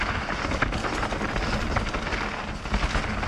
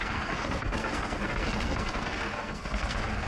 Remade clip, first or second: second